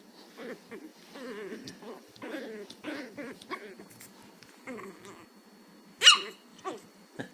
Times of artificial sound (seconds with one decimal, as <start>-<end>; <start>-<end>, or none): 0.9-3.8; 6.5-7.3